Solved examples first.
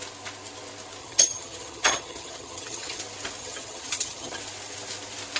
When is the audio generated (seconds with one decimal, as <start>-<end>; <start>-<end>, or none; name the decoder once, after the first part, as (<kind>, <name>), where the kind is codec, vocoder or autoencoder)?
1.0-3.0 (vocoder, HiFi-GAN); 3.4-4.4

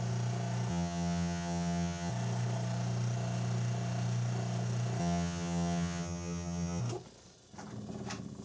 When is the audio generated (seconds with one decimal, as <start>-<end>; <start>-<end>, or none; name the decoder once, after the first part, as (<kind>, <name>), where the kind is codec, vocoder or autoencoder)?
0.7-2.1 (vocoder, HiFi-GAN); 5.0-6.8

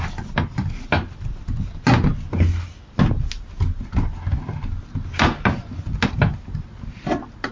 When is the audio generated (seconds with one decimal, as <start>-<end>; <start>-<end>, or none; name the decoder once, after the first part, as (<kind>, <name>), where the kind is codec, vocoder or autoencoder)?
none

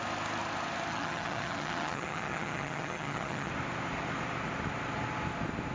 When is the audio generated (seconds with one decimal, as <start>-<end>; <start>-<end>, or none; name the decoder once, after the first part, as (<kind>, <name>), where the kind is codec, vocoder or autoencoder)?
0.9-3.5 (vocoder, HiFi-GAN)

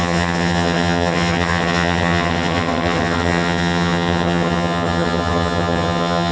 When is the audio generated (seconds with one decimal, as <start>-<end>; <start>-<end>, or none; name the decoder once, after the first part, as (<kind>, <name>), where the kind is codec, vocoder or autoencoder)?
0.0-6.3 (vocoder, HiFi-GAN)

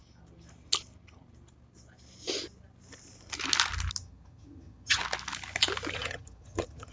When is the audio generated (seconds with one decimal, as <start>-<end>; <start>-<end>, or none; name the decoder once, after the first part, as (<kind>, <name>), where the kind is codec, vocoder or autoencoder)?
4.0-5.0 (vocoder, HiFi-GAN); 5.9-6.9